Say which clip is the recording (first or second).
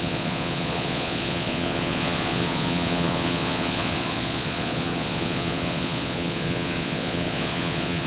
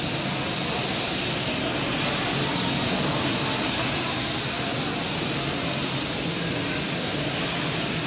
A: second